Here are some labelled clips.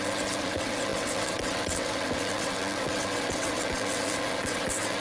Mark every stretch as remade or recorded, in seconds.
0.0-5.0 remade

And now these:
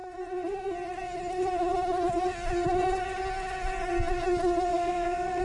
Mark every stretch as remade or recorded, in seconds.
0.0-4.7 recorded; 4.7-5.4 remade

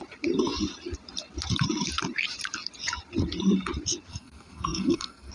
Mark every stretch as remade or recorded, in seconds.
0.0-4.1 recorded; 4.1-5.3 remade

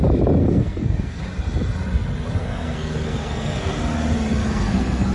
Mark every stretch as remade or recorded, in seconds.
0.0-0.4 recorded; 0.4-1.2 remade; 1.2-2.4 recorded; 2.4-3.7 remade; 3.7-4.4 recorded; 4.4-5.1 remade